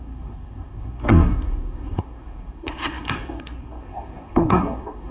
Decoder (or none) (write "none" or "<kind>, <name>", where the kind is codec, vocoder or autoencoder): codec, SNAC